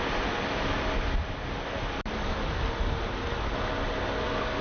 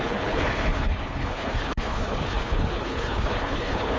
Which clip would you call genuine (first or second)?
first